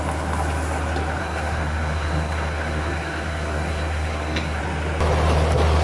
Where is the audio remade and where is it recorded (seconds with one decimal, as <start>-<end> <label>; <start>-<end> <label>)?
0.0-1.2 recorded; 1.2-4.6 remade; 4.6-5.8 recorded